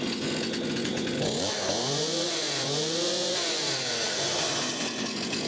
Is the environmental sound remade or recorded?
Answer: remade